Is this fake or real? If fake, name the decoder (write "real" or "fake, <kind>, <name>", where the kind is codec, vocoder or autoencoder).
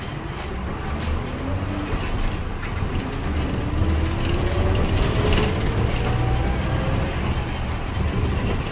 real